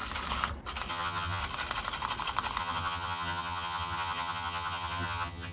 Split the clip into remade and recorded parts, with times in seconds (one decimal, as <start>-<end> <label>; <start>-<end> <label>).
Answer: 0.0-0.9 recorded; 0.9-1.4 remade; 1.4-2.6 recorded; 2.6-5.5 remade